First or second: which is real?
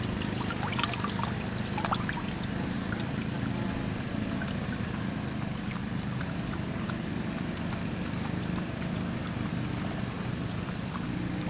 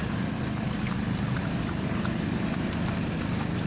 first